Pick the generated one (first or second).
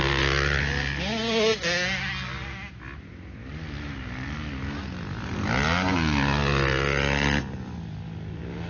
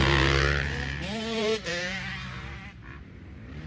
second